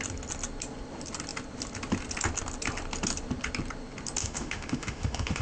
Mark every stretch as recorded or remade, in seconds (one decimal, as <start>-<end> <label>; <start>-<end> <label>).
0.0-4.2 recorded; 4.2-5.4 remade